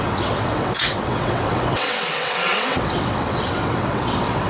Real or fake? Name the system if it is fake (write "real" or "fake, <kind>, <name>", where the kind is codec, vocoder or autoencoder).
fake, vocoder, WaveNeXt